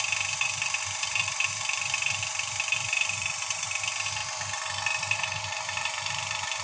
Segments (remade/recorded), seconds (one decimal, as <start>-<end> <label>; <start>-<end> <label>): 0.0-6.6 remade